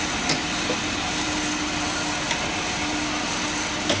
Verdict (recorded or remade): recorded